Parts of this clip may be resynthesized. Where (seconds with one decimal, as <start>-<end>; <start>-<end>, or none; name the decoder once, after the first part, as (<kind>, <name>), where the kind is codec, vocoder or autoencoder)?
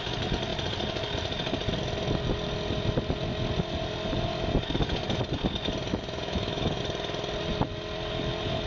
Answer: 5.9-6.8 (autoencoder, DAC-VAE)